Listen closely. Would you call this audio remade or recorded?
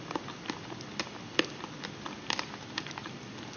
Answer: recorded